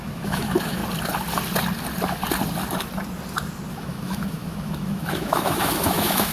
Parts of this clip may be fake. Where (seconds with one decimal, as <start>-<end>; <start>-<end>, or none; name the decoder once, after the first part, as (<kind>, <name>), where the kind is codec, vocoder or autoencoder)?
0.0-0.8 (autoencoder, DAC-VAE); 3.7-6.3